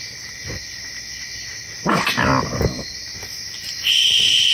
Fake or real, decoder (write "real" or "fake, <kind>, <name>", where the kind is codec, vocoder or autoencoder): real